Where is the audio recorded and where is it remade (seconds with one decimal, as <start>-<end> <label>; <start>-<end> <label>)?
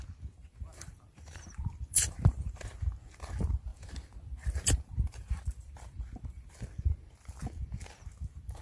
0.0-0.4 recorded; 0.4-2.6 remade; 2.6-3.7 recorded; 3.7-6.5 remade; 6.5-8.6 recorded